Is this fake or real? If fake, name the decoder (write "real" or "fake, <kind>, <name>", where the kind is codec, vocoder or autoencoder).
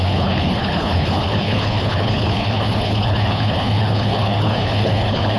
fake, codec, HILCodec